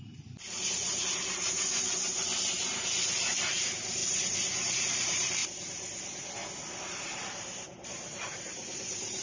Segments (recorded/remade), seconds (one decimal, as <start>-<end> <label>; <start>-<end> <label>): 0.0-4.0 remade; 4.0-4.8 recorded; 4.8-5.4 remade; 5.4-6.9 recorded; 6.9-9.2 remade

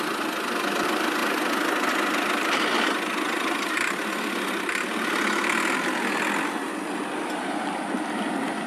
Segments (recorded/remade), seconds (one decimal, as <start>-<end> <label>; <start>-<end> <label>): 0.0-8.7 recorded

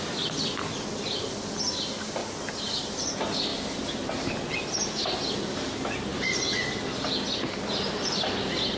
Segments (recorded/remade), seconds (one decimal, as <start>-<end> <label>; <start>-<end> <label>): 0.0-3.5 recorded; 3.5-4.2 remade; 4.2-8.8 recorded

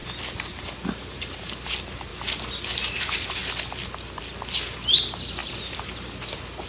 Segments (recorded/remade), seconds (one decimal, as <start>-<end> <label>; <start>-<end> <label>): 0.0-1.4 remade; 1.4-5.4 recorded; 5.4-6.3 remade; 6.3-6.7 recorded

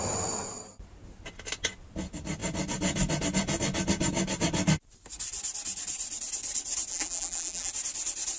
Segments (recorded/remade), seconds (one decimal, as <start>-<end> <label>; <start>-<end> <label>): 0.0-6.9 recorded; 6.9-7.7 remade; 7.7-8.4 recorded

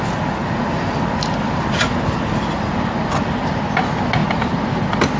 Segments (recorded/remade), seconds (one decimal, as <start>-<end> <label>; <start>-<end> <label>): 0.0-0.4 recorded; 0.4-3.5 remade; 3.5-4.2 recorded; 4.2-4.7 remade; 4.7-5.2 recorded

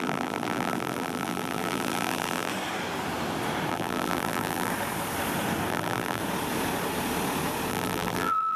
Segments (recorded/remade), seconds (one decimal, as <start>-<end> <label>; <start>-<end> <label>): 0.0-2.5 remade; 2.5-3.7 recorded; 3.7-4.7 remade; 4.7-5.7 recorded; 5.7-6.2 remade; 6.2-7.7 recorded; 7.7-8.6 remade

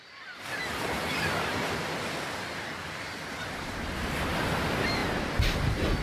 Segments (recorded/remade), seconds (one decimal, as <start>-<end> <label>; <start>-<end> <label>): 0.0-3.6 remade; 3.6-5.0 recorded; 5.0-5.6 remade; 5.6-6.0 recorded